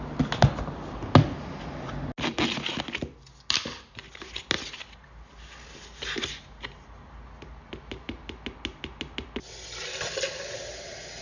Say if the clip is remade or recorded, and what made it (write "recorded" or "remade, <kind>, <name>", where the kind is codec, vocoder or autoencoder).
recorded